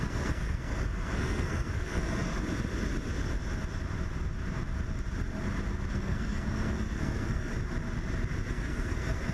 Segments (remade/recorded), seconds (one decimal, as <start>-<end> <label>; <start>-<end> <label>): 0.0-2.3 remade; 2.3-5.9 recorded; 5.9-7.5 remade; 7.5-8.5 recorded; 8.5-9.3 remade